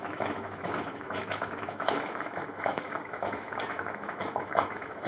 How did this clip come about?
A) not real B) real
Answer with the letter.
A